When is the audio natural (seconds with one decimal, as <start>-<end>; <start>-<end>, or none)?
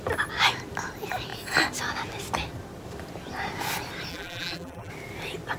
0.0-4.1; 4.9-5.6